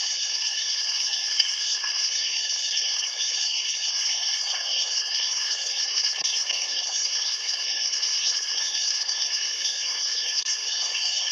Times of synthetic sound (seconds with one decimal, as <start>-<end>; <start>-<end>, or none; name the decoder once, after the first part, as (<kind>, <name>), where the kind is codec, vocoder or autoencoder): 0.0-11.3 (codec, SNAC)